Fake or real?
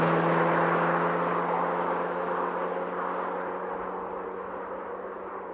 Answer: real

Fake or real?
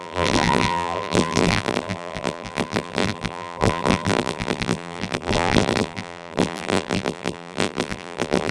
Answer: fake